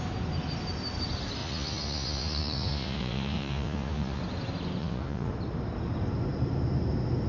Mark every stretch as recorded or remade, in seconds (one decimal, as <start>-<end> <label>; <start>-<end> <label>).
0.0-1.4 recorded; 1.4-4.2 remade; 4.2-4.8 recorded; 4.8-5.3 remade; 5.3-7.3 recorded